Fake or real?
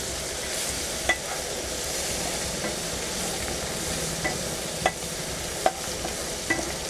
real